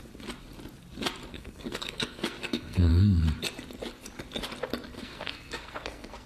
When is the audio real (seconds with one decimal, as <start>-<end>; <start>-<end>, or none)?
0.0-1.3; 2.9-4.9